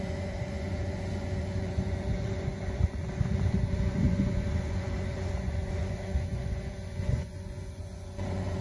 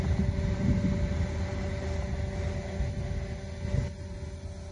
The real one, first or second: second